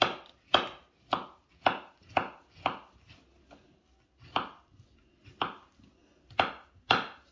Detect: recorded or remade recorded